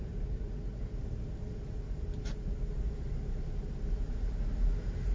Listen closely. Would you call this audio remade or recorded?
remade